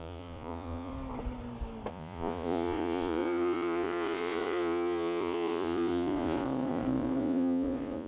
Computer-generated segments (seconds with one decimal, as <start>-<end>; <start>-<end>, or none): 0.0-0.9; 1.9-8.1